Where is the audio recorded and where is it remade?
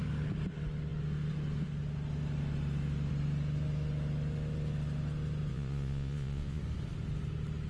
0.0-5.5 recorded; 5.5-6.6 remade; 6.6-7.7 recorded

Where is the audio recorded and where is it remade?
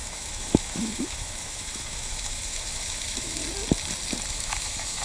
0.0-3.4 remade; 3.4-4.3 recorded; 4.3-5.0 remade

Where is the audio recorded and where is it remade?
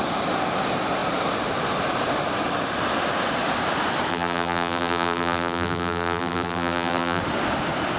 0.0-4.1 recorded; 4.1-7.2 remade; 7.2-8.0 recorded